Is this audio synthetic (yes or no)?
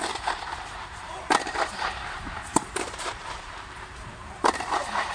yes